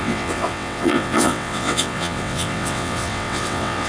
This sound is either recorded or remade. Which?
remade